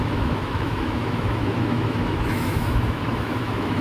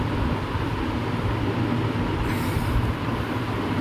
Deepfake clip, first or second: first